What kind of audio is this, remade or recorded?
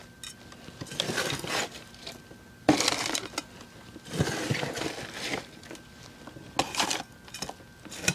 recorded